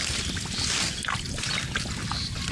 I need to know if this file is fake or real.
real